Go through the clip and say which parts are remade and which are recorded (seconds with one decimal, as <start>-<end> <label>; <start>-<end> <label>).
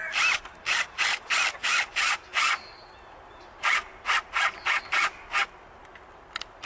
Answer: 0.0-6.7 recorded